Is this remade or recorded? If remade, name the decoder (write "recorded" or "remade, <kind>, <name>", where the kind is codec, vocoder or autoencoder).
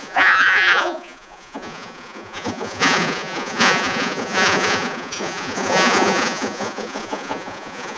remade, vocoder, Vocos